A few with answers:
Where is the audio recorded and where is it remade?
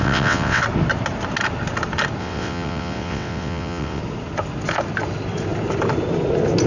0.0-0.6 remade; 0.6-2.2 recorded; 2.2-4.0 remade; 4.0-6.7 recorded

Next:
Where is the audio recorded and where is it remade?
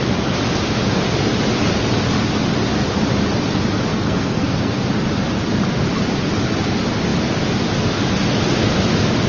0.0-3.9 recorded; 3.9-4.7 remade; 4.7-9.3 recorded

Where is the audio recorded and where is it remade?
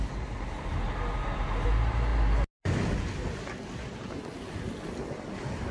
0.0-5.7 recorded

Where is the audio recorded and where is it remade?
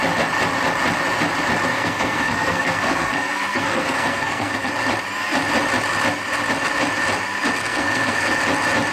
0.0-1.7 recorded; 1.7-4.7 remade; 4.7-7.6 recorded; 7.6-8.4 remade; 8.4-8.9 recorded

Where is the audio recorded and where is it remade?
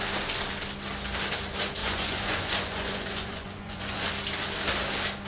0.0-1.8 recorded; 1.8-4.1 remade; 4.1-5.3 recorded